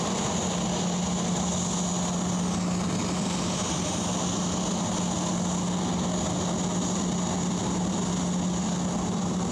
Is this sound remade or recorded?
recorded